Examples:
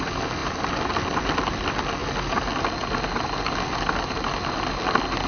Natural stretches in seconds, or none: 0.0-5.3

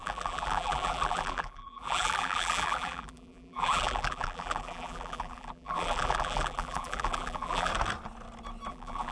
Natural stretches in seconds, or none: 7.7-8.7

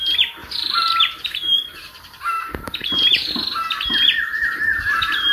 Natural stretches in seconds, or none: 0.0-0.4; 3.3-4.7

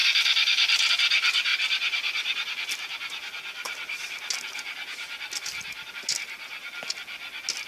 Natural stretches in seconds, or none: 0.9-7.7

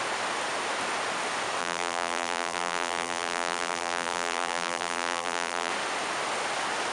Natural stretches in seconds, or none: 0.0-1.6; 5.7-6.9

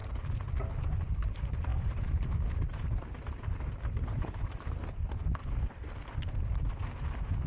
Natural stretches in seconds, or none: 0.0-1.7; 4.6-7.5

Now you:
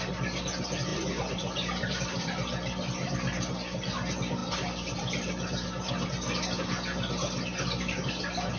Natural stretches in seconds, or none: 0.0-0.9; 3.5-4.4; 5.9-8.6

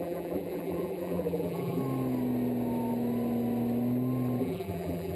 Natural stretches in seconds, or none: 1.8-4.4